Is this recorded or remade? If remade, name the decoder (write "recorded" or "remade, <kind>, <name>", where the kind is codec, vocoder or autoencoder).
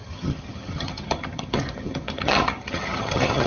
remade, vocoder, HiFi-GAN